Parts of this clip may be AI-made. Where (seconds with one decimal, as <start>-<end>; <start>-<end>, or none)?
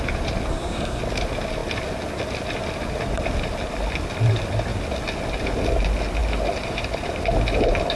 0.5-1.0